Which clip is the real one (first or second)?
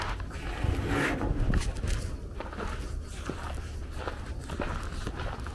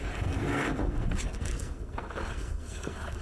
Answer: first